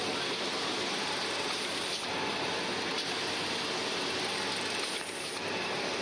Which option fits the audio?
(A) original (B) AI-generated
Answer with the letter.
A